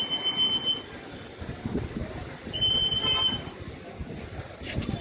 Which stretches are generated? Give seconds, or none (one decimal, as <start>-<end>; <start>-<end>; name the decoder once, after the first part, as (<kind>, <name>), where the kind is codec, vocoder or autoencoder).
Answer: 2.0-5.0 (vocoder, BigVGAN v2)